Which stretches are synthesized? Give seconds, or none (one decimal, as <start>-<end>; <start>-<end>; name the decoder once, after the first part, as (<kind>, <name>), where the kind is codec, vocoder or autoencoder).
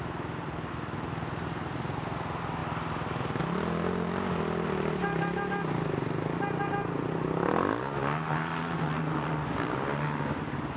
none